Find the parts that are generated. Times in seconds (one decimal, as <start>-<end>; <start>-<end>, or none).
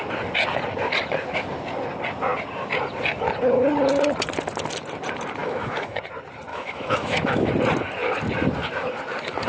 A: 5.4-6.0; 6.5-7.5